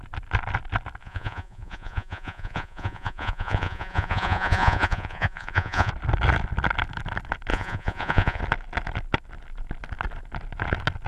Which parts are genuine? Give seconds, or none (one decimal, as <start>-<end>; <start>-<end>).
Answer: 0.0-1.0; 5.9-7.5; 8.4-11.1